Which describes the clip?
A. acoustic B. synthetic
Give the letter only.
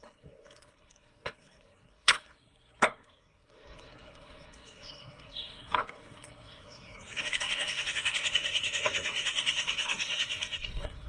B